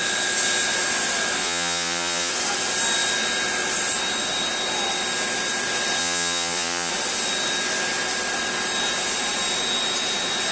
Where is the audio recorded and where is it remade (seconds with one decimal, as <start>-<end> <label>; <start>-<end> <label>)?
0.0-1.4 recorded; 1.4-2.3 remade; 2.3-6.0 recorded; 6.0-6.9 remade; 6.9-10.5 recorded